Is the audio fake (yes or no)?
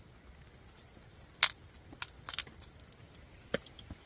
no